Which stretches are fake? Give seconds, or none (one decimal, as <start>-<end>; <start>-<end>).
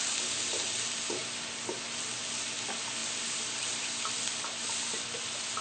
3.0-3.7